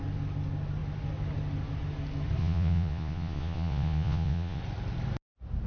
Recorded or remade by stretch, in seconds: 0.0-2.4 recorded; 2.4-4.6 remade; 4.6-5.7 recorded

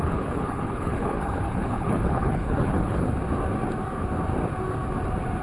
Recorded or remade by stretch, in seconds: 0.0-3.2 remade; 3.2-5.4 recorded

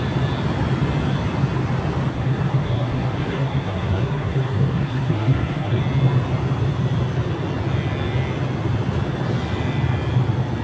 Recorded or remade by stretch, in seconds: 0.0-2.1 recorded; 2.1-5.8 remade; 5.8-10.6 recorded